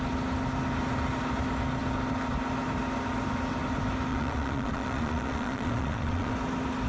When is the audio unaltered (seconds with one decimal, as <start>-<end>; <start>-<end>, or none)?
0.0-4.1; 6.3-6.9